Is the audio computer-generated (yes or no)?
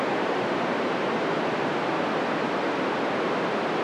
no